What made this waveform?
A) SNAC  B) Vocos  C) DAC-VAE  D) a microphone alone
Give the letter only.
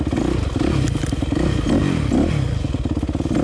D